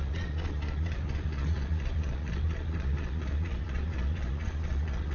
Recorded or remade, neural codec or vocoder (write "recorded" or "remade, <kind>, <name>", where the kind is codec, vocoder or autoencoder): remade, vocoder, Vocos